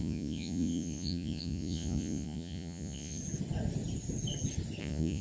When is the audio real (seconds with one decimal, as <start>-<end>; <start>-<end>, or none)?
3.2-4.8